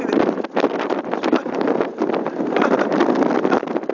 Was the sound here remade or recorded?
recorded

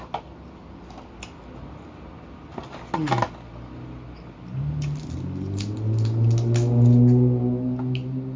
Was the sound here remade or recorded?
recorded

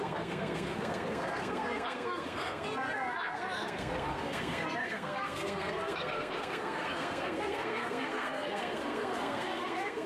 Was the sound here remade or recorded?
remade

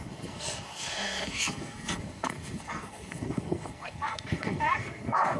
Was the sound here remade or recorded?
remade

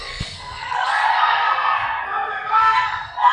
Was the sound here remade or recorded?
remade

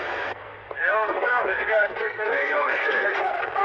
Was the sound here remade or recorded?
remade